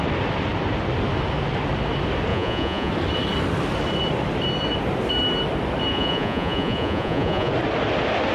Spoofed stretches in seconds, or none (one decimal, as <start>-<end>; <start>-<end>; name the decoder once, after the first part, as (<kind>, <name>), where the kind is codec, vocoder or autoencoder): 2.3-2.9 (vocoder, Vocos); 5.9-7.5